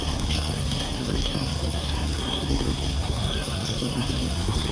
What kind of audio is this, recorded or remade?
remade